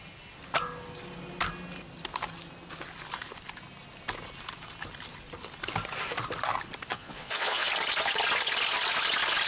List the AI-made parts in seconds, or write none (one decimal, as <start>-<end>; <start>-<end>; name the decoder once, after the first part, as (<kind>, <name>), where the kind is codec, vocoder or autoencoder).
6.9-7.7 (vocoder, Vocos)